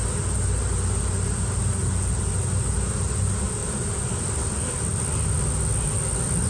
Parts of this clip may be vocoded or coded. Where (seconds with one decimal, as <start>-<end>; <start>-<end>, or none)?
none